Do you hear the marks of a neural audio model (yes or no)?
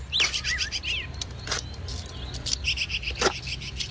no